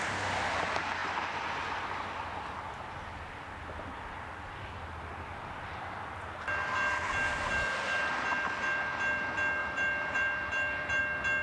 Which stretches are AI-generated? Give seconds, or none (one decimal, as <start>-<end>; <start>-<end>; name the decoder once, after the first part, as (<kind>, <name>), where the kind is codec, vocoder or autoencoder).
9.6-11.0 (vocoder, BigVGAN v2)